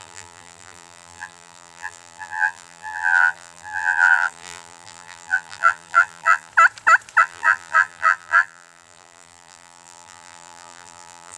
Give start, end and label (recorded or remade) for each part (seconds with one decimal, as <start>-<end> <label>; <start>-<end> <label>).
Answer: 0.0-6.5 remade; 6.5-7.2 recorded; 7.2-11.4 remade